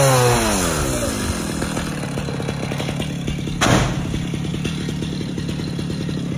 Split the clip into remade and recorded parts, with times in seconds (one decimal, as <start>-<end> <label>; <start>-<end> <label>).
0.0-4.5 recorded; 4.5-6.4 remade